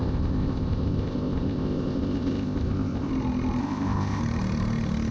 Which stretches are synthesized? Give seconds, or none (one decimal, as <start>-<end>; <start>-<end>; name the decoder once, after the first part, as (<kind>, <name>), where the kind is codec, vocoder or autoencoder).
0.0-3.1 (codec, ZipCodec); 3.6-4.2